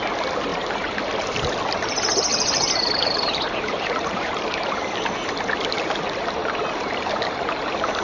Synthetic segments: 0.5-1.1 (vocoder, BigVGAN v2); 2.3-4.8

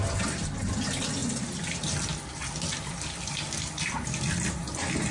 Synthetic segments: none